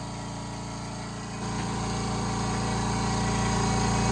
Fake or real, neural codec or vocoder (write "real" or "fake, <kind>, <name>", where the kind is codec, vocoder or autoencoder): real